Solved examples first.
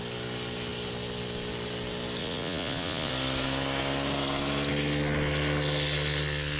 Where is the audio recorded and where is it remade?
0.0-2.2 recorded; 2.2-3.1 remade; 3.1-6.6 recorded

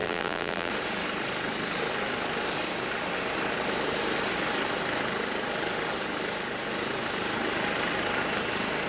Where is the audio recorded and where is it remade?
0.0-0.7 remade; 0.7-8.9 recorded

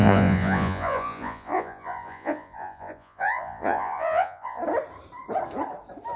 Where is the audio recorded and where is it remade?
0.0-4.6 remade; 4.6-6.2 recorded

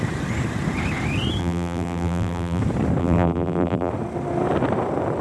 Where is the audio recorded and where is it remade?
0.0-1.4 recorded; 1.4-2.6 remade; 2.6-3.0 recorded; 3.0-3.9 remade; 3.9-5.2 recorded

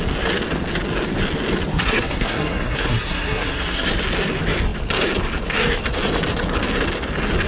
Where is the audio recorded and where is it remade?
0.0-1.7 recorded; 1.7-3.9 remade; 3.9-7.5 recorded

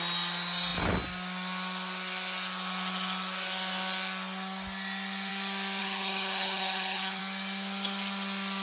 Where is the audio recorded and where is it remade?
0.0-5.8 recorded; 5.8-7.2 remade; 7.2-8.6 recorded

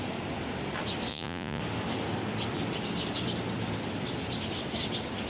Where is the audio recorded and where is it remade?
0.0-1.1 recorded; 1.1-1.6 remade; 1.6-5.3 recorded

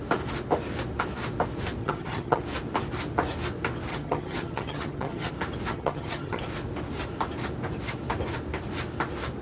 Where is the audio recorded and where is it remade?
0.0-1.8 recorded; 1.8-2.4 remade; 2.4-3.9 recorded; 3.9-5.3 remade; 5.3-5.7 recorded; 5.7-6.4 remade; 6.4-9.4 recorded